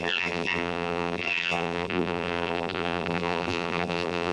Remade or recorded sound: remade